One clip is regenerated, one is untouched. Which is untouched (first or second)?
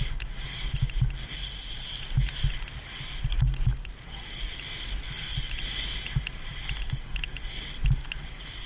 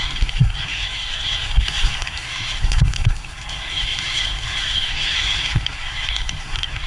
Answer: first